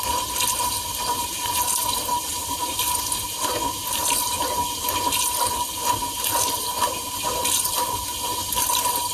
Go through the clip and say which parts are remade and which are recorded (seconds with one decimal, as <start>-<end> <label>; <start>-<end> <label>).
0.0-9.1 recorded